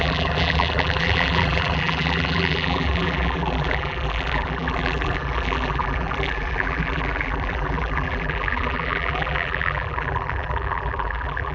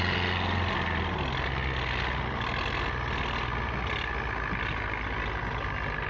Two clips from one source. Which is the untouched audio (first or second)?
second